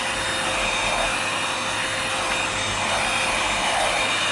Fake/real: real